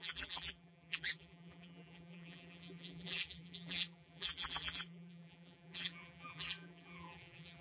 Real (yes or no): no